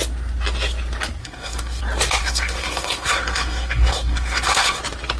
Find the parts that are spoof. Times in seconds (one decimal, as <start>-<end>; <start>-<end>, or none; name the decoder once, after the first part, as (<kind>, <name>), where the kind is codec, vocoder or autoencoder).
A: 1.2-1.8 (codec, SNAC); 2.2-4.8

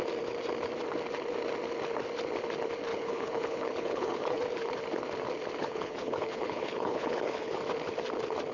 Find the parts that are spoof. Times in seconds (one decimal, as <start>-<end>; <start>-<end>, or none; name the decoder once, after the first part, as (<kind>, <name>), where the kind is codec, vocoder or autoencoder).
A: 2.9-4.4 (codec, HILCodec); 5.6-7.6

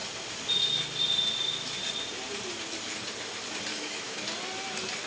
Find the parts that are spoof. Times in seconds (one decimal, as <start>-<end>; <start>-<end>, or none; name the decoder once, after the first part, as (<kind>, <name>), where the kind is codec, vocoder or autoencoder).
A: 3.7-4.2 (autoencoder, DAC-VAE)